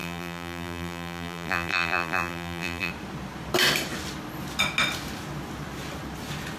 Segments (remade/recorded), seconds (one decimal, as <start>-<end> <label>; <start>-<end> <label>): 0.0-2.9 remade; 2.9-6.6 recorded